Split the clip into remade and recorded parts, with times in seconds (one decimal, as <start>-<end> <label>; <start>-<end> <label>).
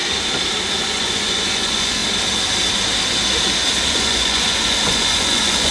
0.0-0.7 recorded; 0.7-2.0 remade; 2.0-3.9 recorded; 3.9-5.7 remade